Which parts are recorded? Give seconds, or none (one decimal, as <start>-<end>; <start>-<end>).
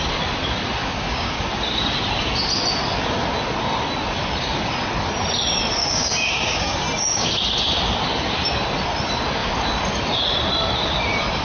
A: 0.0-0.8; 1.4-5.8; 7.3-11.4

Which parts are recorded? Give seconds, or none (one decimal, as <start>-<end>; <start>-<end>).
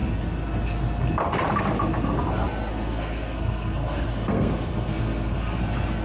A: 0.0-2.7; 5.6-6.0